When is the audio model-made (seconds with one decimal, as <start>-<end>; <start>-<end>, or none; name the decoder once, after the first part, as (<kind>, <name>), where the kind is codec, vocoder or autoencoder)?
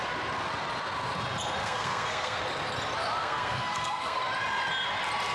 1.6-2.4 (codec, SNAC); 3.2-4.2